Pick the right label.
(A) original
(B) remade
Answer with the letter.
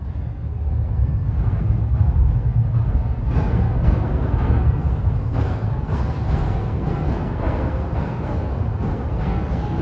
B